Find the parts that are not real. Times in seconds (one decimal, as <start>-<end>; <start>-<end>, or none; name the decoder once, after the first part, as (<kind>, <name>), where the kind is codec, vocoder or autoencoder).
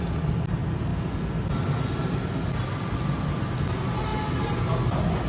none